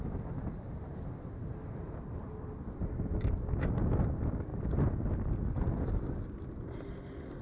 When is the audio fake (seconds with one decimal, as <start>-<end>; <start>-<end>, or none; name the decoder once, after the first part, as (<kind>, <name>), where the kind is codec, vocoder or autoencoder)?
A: none